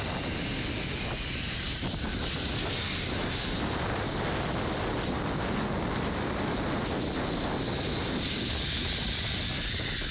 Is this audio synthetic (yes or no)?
no